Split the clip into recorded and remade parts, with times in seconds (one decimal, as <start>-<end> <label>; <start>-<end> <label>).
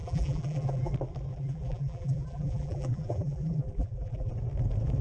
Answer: 0.0-0.9 remade; 0.9-1.3 recorded; 1.3-4.3 remade; 4.3-5.0 recorded